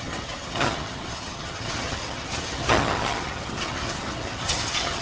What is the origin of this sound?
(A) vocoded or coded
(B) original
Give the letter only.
A